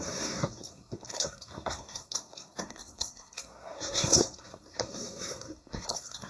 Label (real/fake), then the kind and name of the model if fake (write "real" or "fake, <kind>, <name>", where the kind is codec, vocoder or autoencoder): fake, codec, SNAC